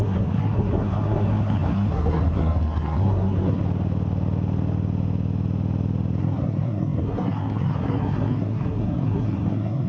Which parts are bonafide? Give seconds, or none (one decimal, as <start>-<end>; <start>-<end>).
3.6-6.2